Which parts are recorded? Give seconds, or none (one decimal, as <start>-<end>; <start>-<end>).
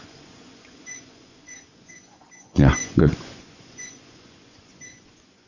none